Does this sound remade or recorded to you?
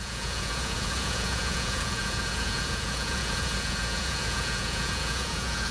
remade